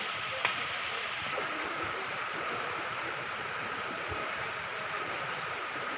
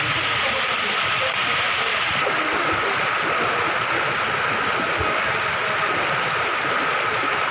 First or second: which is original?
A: second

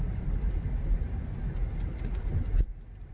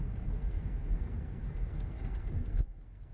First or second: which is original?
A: first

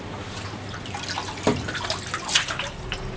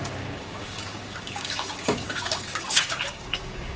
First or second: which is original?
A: first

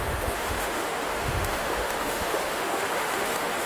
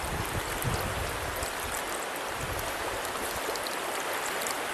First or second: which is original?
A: second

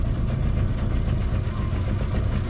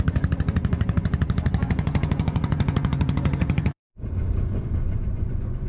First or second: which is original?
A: first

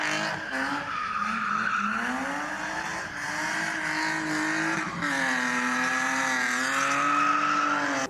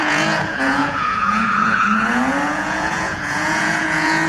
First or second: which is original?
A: first